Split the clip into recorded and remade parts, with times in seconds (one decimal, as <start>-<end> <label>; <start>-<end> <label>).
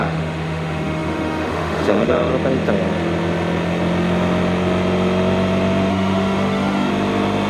0.0-2.3 remade; 2.3-5.9 recorded; 5.9-6.9 remade; 6.9-7.5 recorded